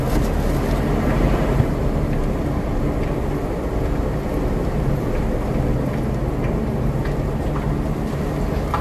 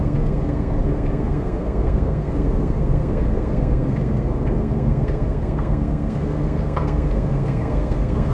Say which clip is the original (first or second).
first